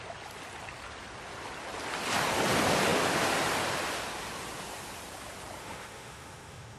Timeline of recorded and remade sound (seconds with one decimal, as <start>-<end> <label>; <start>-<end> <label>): 0.0-5.6 recorded; 5.6-6.8 remade

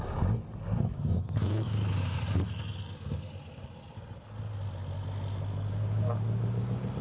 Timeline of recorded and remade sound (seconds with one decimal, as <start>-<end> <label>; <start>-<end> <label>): 0.0-0.9 recorded; 0.9-2.2 remade; 2.2-7.0 recorded